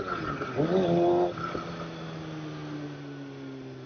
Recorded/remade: recorded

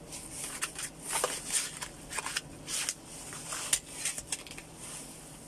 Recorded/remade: recorded